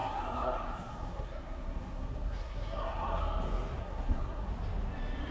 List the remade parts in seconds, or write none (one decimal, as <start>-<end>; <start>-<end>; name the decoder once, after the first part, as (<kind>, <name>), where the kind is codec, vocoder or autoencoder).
0.0-3.2 (codec, SNAC); 3.8-4.5